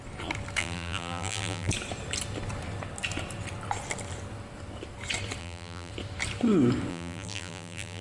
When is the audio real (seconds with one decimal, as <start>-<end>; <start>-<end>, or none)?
0.0-0.6; 1.7-5.4; 5.9-6.9